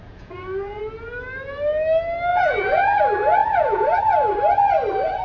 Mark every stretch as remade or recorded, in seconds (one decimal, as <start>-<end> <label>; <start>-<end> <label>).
0.0-0.8 remade; 0.8-2.3 recorded; 2.3-3.0 remade; 3.0-3.4 recorded; 3.4-4.0 remade; 4.0-5.2 recorded